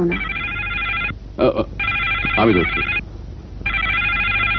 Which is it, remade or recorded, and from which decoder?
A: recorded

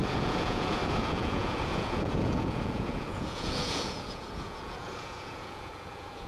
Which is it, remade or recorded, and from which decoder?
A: remade, vocoder, Vocos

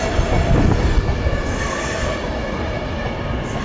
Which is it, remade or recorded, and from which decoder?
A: recorded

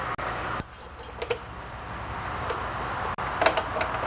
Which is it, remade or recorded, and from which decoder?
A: recorded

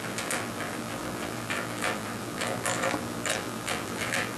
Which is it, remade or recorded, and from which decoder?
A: remade, vocoder, BigVGAN v2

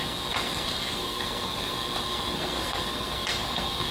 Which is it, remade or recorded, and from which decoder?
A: remade, codec, SNAC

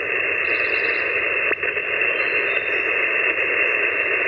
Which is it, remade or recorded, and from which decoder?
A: recorded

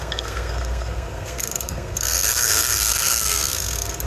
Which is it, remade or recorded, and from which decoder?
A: remade, codec, SNAC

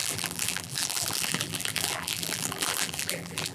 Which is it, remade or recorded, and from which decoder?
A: remade, vocoder, BigVGAN v2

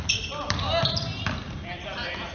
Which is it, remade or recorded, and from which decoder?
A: remade, vocoder, BigVGAN v2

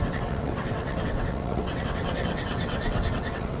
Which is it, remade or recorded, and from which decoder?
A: remade, vocoder, WaveNeXt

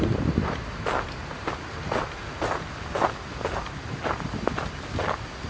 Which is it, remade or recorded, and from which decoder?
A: recorded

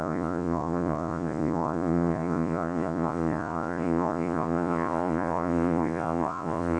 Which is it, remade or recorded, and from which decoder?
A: remade, vocoder, Vocos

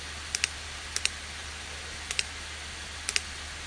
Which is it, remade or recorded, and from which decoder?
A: recorded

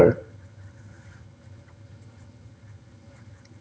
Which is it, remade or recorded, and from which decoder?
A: remade, vocoder, HiFi-GAN